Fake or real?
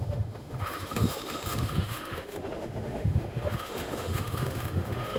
fake